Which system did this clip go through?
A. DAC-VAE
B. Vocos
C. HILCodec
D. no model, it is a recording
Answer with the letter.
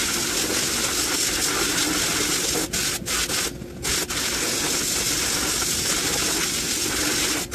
D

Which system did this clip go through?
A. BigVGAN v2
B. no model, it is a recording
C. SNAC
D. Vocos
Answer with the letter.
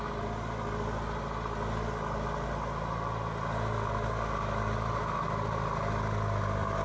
B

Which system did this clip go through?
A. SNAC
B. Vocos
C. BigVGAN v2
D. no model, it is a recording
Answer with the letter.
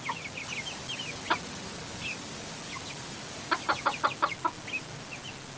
D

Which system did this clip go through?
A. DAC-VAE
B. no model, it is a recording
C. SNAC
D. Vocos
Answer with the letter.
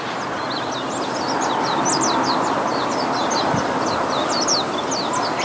B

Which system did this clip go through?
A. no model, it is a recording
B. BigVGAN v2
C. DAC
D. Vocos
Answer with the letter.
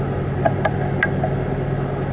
A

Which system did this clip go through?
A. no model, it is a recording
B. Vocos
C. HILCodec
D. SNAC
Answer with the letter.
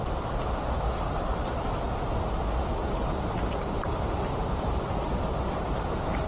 A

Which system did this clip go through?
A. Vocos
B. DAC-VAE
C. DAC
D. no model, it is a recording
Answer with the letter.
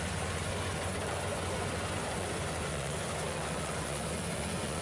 A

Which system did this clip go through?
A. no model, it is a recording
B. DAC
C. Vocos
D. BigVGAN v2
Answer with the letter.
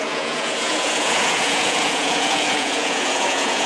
C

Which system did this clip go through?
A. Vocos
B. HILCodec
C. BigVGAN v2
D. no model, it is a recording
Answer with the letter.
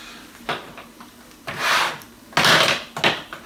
D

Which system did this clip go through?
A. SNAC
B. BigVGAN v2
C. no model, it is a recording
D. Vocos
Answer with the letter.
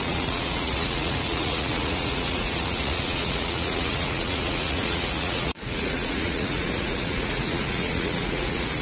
D